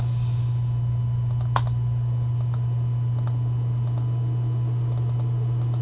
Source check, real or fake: real